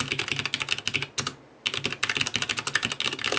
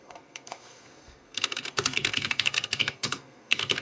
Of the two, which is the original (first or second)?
first